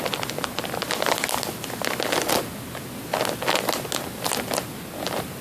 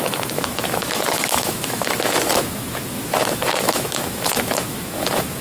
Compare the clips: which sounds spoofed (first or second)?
second